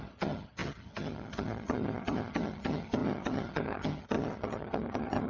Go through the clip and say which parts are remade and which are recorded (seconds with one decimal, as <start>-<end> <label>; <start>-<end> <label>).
0.0-5.3 remade